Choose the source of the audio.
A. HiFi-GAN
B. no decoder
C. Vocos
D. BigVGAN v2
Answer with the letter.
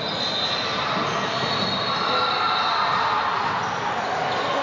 B